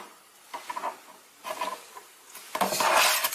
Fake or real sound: real